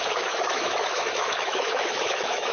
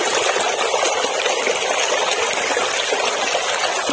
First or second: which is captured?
second